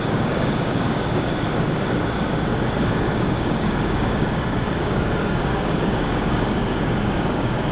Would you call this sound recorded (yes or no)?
no